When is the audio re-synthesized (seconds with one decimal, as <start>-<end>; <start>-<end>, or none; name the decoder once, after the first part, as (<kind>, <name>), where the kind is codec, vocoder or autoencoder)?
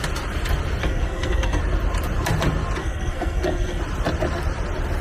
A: 0.8-1.6 (codec, SNAC); 2.8-3.8